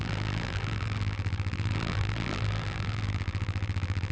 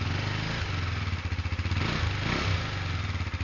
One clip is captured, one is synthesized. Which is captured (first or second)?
second